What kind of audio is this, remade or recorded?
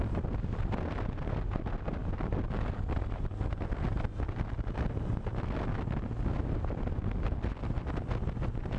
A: recorded